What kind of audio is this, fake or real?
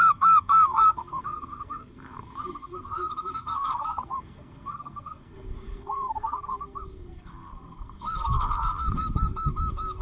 fake